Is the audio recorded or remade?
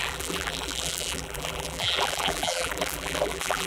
remade